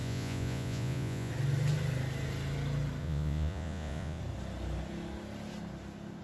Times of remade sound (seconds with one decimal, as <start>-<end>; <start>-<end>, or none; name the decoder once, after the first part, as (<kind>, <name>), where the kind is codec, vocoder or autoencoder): 0.0-1.3 (vocoder, Vocos); 3.0-4.2